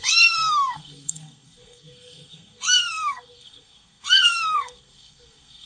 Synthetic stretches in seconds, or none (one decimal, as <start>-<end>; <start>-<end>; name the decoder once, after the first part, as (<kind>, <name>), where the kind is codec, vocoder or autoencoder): 0.0-5.7 (codec, SNAC)